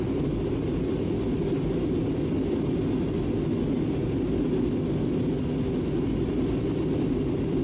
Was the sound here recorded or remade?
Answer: recorded